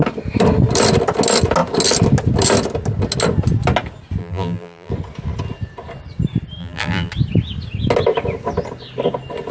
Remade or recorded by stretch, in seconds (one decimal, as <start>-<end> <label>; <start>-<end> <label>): 0.0-4.2 recorded; 4.2-4.9 remade; 4.9-6.6 recorded; 6.6-7.1 remade; 7.1-9.5 recorded